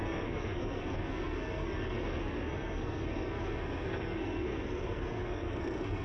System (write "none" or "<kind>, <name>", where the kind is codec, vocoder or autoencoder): codec, SNAC